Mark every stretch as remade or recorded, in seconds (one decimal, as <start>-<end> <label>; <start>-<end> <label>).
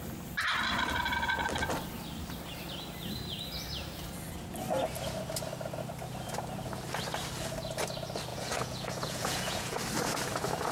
0.0-8.3 recorded; 8.3-9.8 remade; 9.8-10.7 recorded